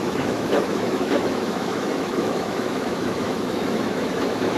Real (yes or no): no